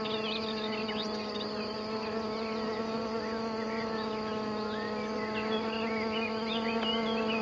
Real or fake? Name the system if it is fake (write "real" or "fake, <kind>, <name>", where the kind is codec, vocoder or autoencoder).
real